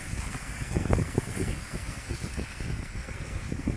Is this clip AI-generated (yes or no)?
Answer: yes